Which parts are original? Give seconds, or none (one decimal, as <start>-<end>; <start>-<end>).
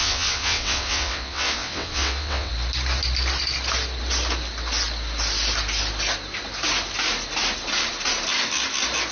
2.5-9.1